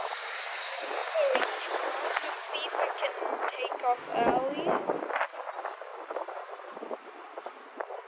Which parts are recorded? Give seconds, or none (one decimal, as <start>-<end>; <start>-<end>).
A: 0.0-5.9